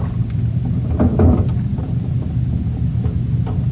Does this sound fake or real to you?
real